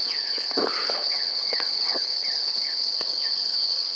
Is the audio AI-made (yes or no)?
yes